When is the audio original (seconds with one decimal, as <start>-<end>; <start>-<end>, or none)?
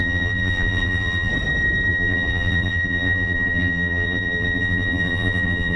1.3-1.9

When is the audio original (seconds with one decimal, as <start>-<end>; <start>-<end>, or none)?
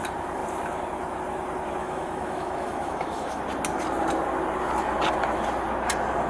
0.0-1.8; 3.4-6.3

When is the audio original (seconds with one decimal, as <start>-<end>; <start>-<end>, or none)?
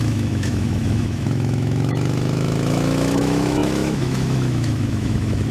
none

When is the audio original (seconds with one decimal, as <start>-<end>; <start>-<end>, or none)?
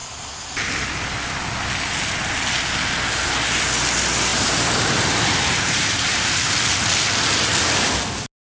0.0-4.3; 6.4-8.5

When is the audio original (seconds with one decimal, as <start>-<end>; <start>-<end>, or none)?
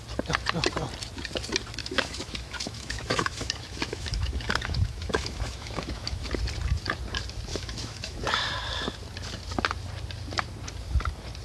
0.0-1.8; 6.3-7.5; 8.2-11.4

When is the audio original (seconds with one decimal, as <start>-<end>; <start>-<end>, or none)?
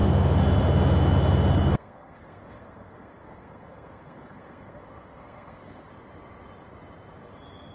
0.0-1.7; 5.9-7.7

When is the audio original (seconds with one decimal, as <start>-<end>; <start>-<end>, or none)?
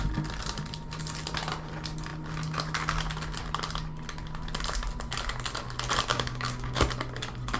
0.0-6.1; 6.8-7.6